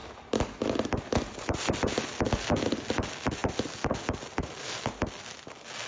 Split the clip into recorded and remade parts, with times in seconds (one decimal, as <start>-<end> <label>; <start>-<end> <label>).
0.0-5.9 recorded